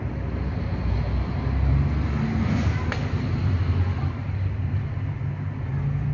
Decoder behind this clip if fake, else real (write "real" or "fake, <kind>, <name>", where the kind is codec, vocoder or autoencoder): real